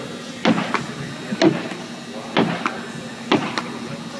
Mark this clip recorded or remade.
recorded